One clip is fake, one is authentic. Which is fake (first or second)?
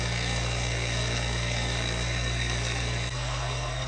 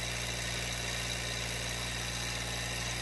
first